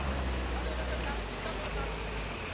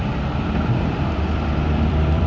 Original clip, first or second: first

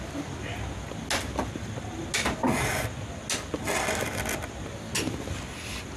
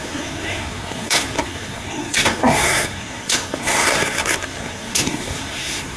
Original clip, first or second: first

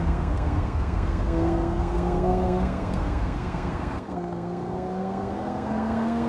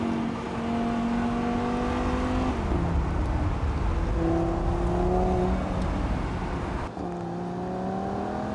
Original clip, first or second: second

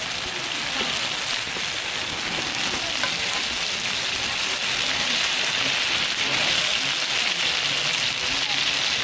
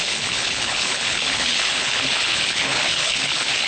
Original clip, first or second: first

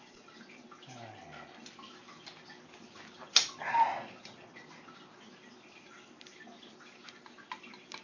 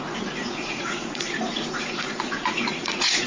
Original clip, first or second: first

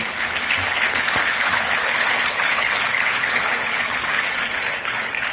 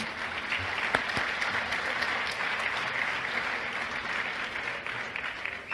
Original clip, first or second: second